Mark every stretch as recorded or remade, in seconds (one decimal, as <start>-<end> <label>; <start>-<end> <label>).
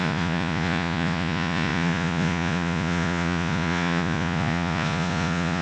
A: 0.0-5.6 remade